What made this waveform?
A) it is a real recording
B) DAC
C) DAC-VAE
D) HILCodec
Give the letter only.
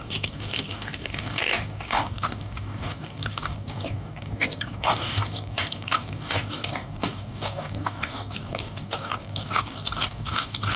B